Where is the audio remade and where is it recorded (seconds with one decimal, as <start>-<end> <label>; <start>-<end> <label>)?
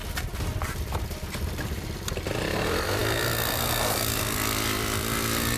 0.0-2.1 remade; 2.1-3.0 recorded; 3.0-4.0 remade; 4.0-5.6 recorded